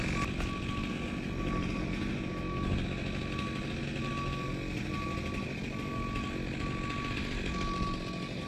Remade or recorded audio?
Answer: recorded